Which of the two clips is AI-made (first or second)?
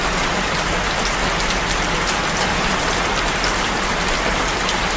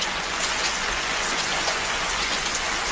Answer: second